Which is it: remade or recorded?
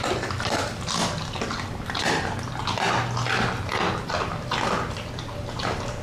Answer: recorded